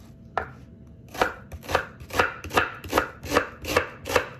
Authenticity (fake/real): real